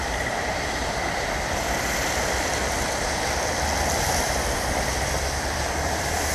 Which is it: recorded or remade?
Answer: remade